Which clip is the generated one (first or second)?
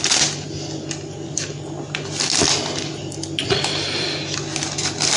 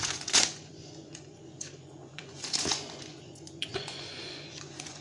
second